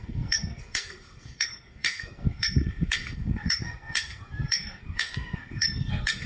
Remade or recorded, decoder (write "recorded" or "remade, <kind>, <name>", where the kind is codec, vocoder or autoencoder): remade, codec, SNAC